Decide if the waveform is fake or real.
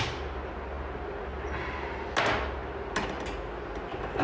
real